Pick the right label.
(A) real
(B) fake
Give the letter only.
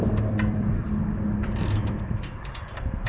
B